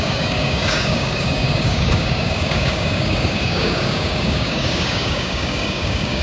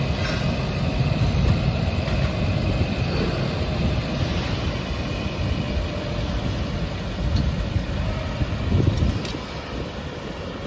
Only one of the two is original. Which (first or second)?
second